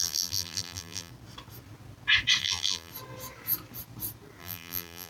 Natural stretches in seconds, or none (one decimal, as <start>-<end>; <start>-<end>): 1.1-2.4; 2.9-4.4